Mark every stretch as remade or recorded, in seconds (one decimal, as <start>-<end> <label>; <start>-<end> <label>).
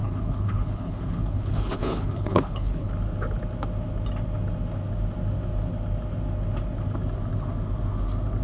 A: 0.0-2.9 remade; 2.9-8.4 recorded